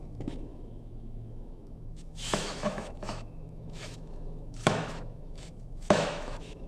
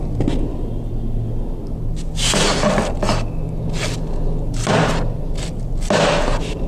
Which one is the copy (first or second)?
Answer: first